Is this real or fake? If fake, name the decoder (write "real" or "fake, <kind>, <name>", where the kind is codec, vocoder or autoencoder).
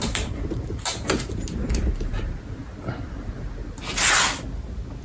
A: real